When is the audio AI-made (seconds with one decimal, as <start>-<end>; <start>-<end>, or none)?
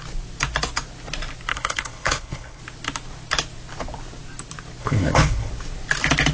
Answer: 1.5-2.6; 4.8-5.5